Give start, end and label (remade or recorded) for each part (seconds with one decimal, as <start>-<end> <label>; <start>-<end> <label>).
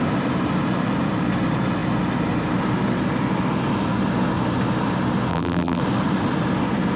0.0-5.3 recorded; 5.3-5.8 remade; 5.8-7.0 recorded